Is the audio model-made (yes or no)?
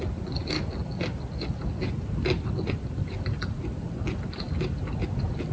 no